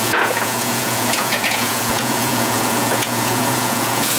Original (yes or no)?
no